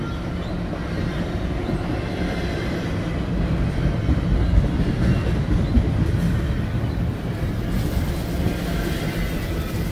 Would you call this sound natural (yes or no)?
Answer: yes